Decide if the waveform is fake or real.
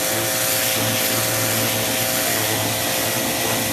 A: real